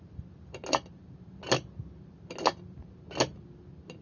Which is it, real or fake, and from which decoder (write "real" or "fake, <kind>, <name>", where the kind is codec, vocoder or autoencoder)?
real